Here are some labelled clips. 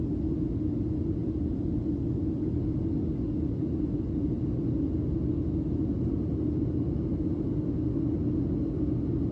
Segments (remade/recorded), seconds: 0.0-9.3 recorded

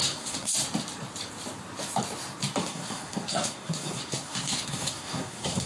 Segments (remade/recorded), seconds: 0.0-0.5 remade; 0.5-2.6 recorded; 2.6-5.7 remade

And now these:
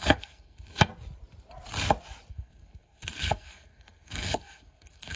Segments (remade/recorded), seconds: 0.0-0.9 remade; 0.9-2.3 recorded; 2.3-5.2 remade

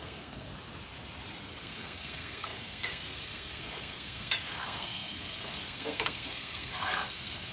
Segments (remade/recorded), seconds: 0.0-0.5 remade; 0.5-1.6 recorded; 1.6-7.5 remade

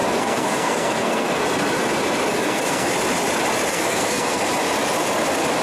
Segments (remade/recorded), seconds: 0.0-1.4 remade; 1.4-2.3 recorded; 2.3-2.9 remade; 2.9-3.7 recorded; 3.7-4.4 remade; 4.4-5.6 recorded

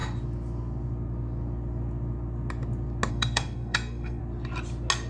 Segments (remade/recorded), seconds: 0.0-3.1 recorded; 3.1-4.2 remade; 4.2-5.1 recorded